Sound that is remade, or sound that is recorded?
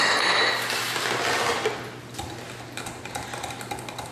recorded